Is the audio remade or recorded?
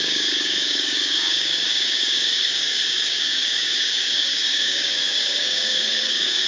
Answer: remade